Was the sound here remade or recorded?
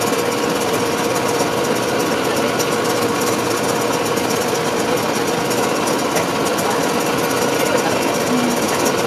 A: recorded